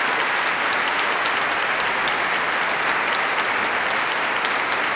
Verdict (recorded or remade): recorded